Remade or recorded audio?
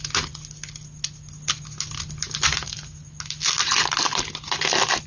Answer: recorded